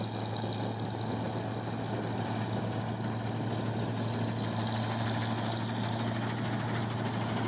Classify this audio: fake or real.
real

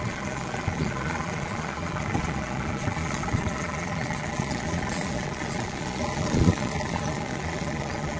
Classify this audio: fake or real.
fake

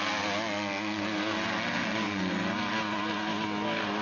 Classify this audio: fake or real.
real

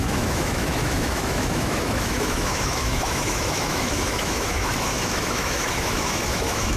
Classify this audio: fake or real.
fake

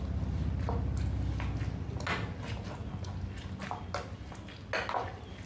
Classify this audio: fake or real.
real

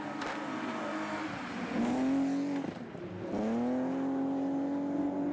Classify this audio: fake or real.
real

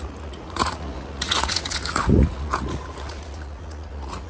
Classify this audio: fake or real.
fake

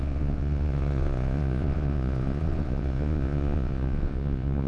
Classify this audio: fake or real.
fake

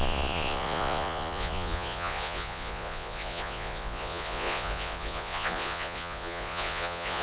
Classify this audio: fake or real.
fake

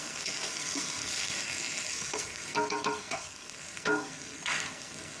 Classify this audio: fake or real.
fake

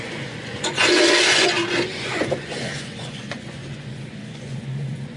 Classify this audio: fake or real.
fake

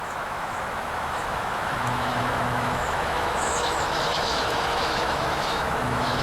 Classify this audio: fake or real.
fake